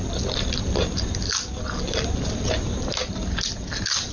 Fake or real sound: real